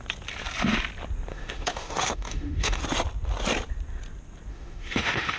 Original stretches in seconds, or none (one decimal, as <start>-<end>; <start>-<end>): 0.0-1.3; 2.8-4.5